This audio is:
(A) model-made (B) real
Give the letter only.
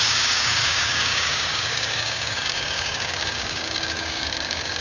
A